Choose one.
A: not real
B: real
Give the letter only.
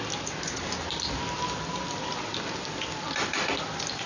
B